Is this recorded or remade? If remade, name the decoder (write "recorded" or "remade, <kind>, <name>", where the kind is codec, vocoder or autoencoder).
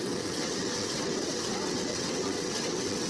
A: remade, vocoder, WaveNeXt